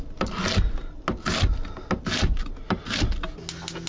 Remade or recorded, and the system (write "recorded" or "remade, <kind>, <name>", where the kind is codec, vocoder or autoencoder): recorded